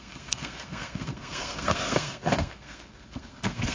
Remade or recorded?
remade